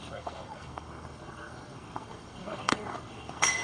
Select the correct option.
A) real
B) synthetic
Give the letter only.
B